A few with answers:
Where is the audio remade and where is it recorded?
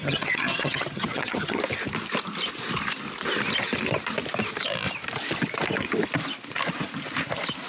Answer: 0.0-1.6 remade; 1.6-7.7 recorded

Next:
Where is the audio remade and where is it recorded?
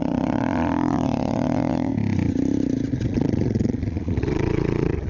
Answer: 0.0-1.9 remade; 1.9-2.9 recorded; 2.9-5.1 remade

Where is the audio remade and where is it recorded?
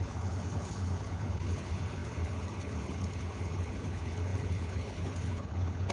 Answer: 0.0-5.9 remade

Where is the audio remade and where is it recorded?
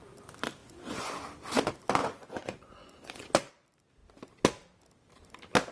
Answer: 0.0-0.6 recorded; 0.6-1.1 remade; 1.1-2.0 recorded; 2.0-3.5 remade; 3.5-5.7 recorded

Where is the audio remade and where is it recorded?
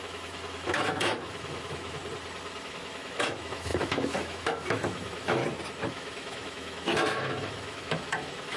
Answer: 0.0-2.0 remade; 2.0-2.6 recorded; 2.6-5.4 remade; 5.4-5.9 recorded; 5.9-8.6 remade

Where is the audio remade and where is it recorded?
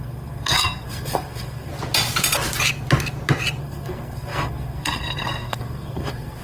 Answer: 0.0-1.7 remade; 1.7-3.6 recorded; 3.6-6.4 remade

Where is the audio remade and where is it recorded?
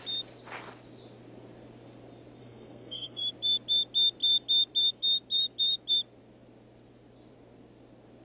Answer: 0.0-2.4 recorded; 2.4-3.2 remade; 3.2-8.2 recorded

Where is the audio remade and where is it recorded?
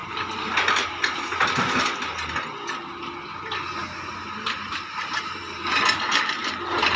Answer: 0.0-1.5 remade; 1.5-3.8 recorded; 3.8-7.0 remade